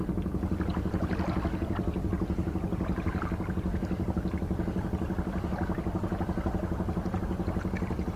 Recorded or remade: recorded